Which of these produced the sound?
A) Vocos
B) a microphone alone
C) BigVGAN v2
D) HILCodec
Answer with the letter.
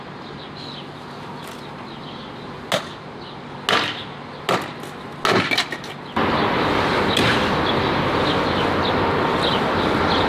B